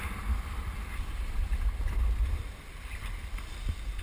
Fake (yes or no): yes